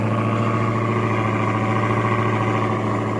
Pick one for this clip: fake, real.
real